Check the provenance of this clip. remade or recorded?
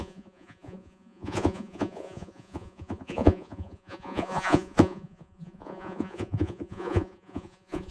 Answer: remade